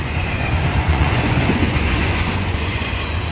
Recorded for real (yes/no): no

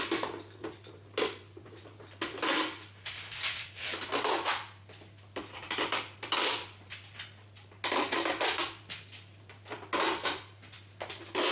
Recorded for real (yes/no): yes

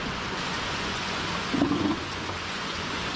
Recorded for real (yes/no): no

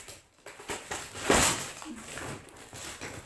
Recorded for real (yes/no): yes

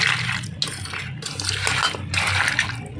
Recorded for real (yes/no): yes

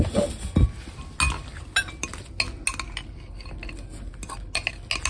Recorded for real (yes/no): yes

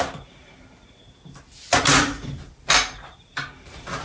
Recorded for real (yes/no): yes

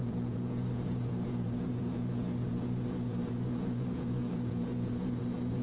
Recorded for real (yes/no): no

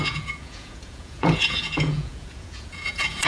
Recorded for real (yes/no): no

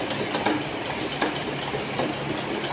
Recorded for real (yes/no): yes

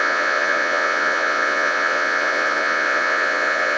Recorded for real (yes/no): no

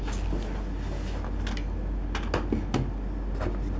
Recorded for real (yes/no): yes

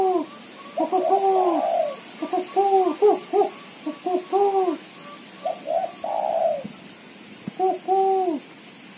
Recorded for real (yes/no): yes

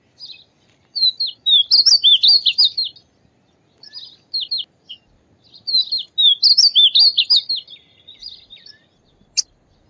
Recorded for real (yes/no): yes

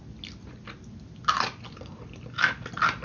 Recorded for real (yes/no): yes